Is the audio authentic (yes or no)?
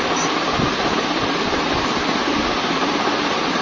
no